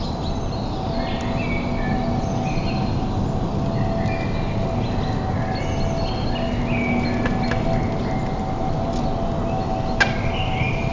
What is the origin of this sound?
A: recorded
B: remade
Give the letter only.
A